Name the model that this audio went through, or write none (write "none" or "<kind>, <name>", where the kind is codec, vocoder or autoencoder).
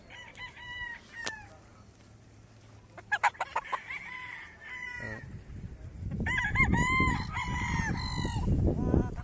none